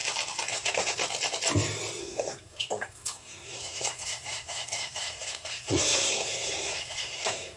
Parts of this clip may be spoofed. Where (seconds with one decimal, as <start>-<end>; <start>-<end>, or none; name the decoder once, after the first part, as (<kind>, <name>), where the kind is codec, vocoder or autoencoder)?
0.5-1.0 (codec, SNAC); 2.0-7.6